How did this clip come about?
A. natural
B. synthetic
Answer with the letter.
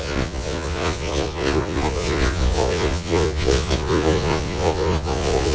B